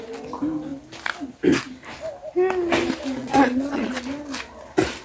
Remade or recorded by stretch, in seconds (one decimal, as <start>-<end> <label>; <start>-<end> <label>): 0.0-3.2 recorded; 3.2-4.0 remade; 4.0-5.0 recorded